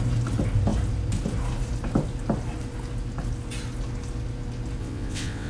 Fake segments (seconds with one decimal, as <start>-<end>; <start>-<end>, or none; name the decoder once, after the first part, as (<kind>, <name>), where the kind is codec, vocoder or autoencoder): 4.8-5.5 (vocoder, WaveNeXt)